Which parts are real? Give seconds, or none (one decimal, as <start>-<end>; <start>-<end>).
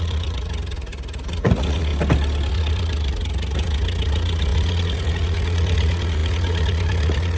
1.9-2.5